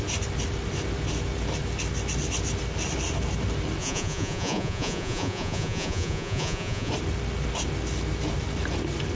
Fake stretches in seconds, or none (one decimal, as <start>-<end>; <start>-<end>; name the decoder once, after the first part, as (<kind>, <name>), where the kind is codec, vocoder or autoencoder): 3.8-6.9 (vocoder, Vocos)